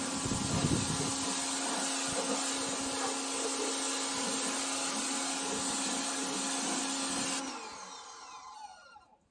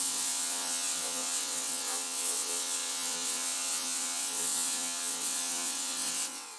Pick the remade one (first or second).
second